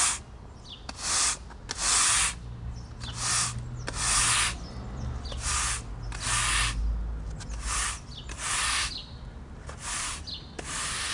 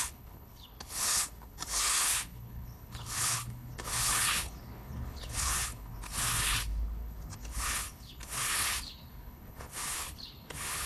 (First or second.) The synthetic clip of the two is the second